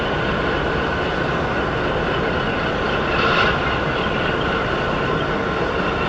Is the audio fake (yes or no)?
no